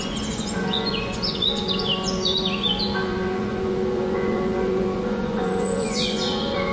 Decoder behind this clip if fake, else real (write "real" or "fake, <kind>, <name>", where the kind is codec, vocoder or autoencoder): fake, vocoder, Vocos